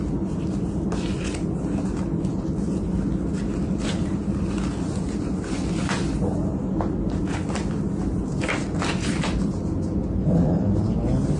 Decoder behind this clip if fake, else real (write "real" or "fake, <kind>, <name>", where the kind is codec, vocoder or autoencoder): real